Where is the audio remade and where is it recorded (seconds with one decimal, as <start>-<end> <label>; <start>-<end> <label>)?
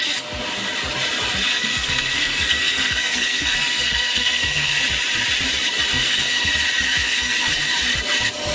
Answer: 0.0-1.5 recorded; 1.5-4.8 remade; 4.8-5.9 recorded; 5.9-6.5 remade; 6.5-6.9 recorded; 6.9-7.5 remade; 7.5-8.5 recorded